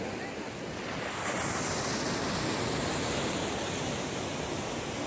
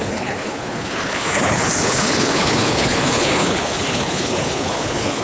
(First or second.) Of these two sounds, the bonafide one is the first